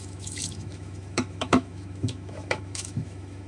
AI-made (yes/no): yes